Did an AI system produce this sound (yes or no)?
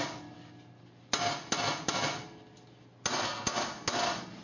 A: no